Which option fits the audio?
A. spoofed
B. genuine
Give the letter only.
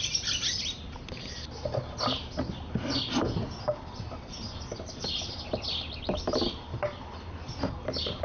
B